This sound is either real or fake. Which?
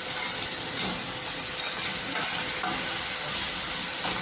real